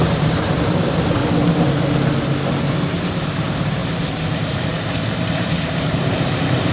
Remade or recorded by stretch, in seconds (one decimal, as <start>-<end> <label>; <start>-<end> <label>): 0.0-1.2 remade; 1.2-2.8 recorded; 2.8-6.7 remade